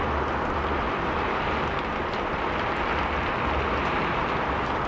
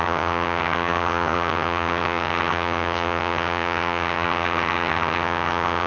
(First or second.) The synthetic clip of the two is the second